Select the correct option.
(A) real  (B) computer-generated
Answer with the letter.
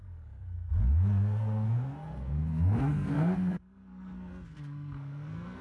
B